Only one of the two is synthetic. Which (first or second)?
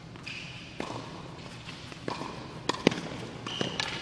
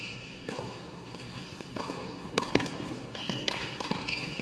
second